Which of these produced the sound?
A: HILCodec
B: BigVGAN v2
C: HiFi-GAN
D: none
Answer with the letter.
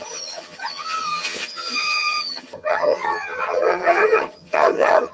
C